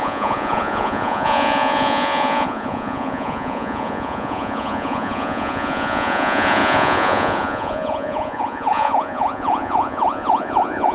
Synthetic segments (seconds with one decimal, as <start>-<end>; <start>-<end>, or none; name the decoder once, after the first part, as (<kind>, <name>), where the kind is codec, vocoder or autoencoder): 0.0-10.9 (vocoder, Vocos)